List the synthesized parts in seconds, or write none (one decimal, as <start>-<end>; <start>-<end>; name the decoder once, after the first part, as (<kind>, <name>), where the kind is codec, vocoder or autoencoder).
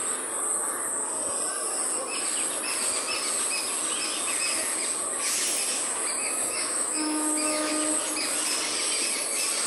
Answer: 6.2-7.7 (autoencoder, DAC-VAE)